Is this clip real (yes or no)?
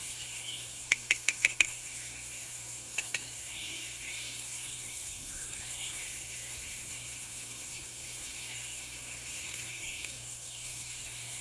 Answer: no